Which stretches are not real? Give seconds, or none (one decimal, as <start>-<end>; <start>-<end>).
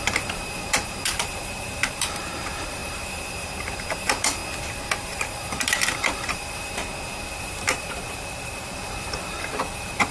0.0-4.4; 5.0-6.8; 7.4-10.1